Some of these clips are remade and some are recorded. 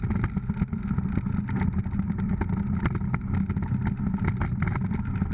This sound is recorded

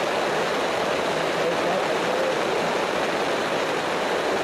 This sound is recorded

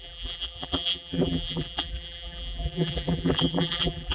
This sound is remade